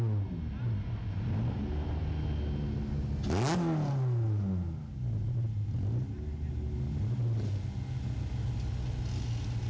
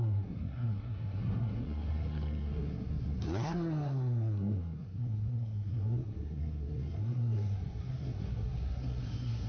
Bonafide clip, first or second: first